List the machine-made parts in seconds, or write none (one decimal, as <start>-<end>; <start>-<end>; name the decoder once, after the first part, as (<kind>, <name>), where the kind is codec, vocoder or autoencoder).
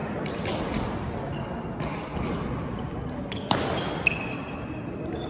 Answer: none